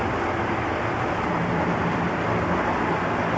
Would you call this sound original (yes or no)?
yes